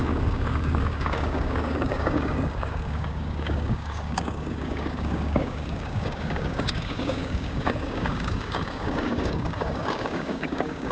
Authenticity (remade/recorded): remade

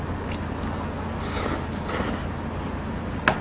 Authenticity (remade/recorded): recorded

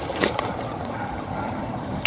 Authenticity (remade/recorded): remade